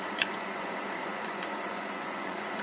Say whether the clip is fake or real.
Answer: fake